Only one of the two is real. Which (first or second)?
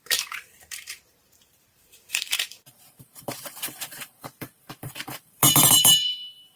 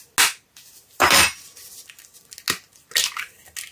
second